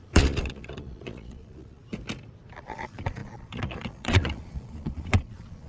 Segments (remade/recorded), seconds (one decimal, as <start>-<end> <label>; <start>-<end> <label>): 0.0-1.8 remade; 1.8-2.6 recorded; 2.6-5.7 remade